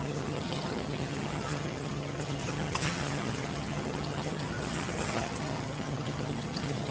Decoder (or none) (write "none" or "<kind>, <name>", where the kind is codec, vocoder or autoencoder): vocoder, HiFi-GAN